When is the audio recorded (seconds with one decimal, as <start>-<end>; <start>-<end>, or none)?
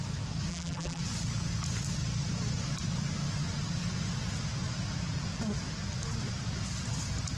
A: 0.0-0.5; 1.0-7.4